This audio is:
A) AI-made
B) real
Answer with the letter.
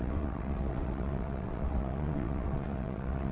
A